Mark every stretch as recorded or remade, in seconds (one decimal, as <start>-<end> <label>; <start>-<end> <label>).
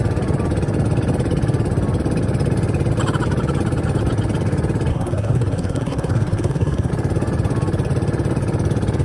0.0-4.9 recorded; 4.9-6.9 remade; 6.9-9.0 recorded